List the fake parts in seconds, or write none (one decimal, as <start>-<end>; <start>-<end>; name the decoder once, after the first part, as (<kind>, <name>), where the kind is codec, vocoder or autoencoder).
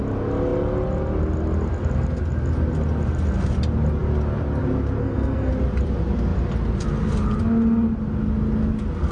5.0-5.5 (codec, SNAC)